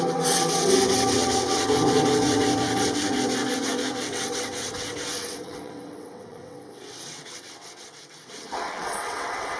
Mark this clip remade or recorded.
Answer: remade